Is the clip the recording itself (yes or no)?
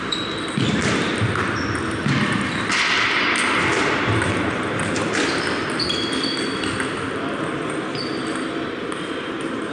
no